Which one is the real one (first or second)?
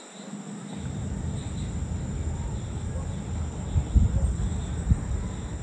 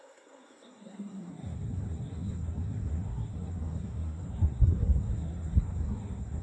first